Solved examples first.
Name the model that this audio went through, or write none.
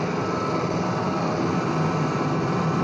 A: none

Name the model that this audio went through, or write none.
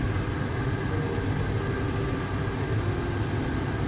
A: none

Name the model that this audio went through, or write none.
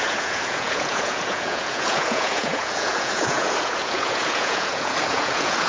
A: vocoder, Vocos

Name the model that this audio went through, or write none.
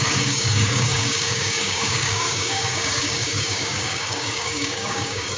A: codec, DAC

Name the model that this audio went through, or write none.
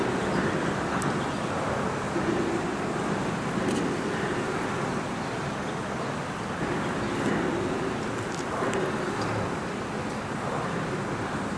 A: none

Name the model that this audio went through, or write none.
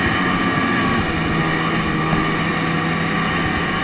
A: none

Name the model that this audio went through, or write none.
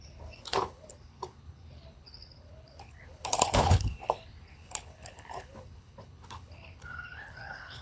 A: codec, HILCodec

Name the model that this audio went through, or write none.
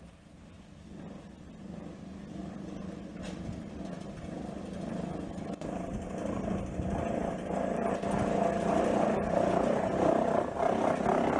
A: none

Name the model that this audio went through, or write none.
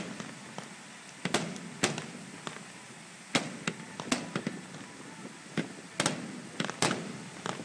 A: none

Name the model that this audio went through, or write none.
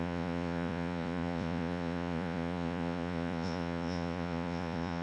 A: vocoder, Vocos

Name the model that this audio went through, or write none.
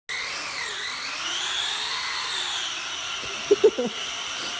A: none